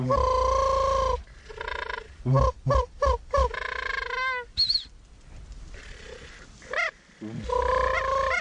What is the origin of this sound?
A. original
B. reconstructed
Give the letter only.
A